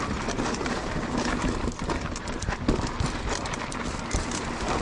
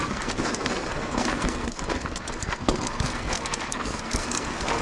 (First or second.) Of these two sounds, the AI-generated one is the second